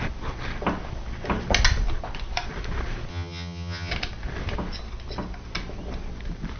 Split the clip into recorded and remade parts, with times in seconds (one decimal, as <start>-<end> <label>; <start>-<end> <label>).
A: 0.0-3.1 recorded; 3.1-3.9 remade; 3.9-6.6 recorded